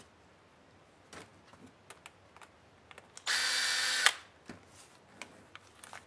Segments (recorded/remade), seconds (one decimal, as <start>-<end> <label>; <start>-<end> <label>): 0.0-6.1 recorded